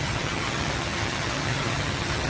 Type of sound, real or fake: fake